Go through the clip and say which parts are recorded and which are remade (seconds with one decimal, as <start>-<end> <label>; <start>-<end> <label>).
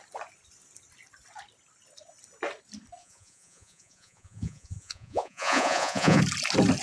0.0-3.0 recorded; 3.0-6.2 remade; 6.2-6.8 recorded